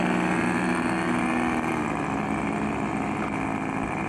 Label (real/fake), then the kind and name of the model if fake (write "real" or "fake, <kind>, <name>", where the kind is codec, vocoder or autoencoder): real